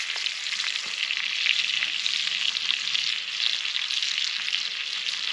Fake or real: real